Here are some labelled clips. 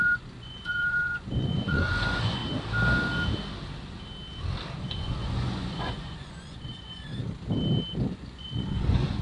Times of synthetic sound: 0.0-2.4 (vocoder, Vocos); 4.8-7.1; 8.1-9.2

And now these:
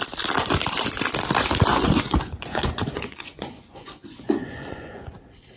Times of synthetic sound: 1.7-5.1 (vocoder, Vocos)

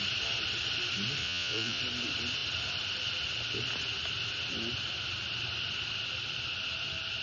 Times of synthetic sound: 1.2-1.8 (vocoder, Vocos)